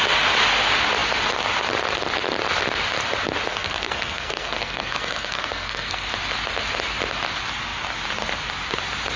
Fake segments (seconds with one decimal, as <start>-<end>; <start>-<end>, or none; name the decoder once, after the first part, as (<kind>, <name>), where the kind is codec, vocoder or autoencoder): 3.5-6.1 (codec, SNAC)

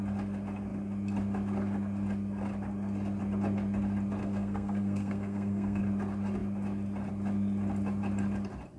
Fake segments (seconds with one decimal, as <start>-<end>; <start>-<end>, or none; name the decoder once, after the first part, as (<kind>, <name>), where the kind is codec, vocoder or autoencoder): 4.2-5.8 (codec, SNAC)

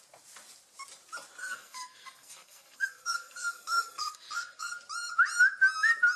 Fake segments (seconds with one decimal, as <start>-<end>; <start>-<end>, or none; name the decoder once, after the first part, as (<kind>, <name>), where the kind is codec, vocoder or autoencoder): 1.4-4.7 (codec, SNAC)

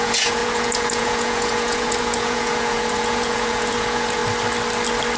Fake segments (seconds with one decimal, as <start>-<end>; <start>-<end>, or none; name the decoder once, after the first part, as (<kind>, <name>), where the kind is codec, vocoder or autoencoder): 0.0-4.2 (vocoder, Vocos)

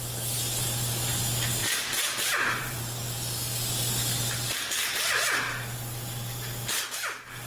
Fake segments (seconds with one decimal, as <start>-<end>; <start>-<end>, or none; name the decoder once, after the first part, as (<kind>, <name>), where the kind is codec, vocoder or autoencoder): 1.6-2.8 (vocoder, BigVGAN v2)

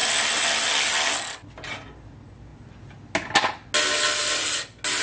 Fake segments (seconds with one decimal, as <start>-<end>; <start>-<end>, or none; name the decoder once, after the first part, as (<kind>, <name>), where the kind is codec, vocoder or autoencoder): none